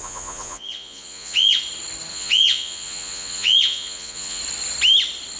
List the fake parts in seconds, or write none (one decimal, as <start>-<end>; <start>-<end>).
0.0-1.6; 2.1-4.4